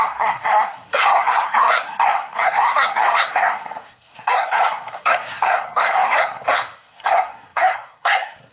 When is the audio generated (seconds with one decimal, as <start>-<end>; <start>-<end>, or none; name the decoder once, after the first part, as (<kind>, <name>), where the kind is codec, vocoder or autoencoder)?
0.0-8.5 (codec, SNAC)